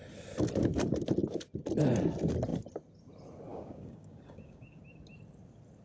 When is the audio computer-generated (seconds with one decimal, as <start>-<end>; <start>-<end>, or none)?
3.5-4.8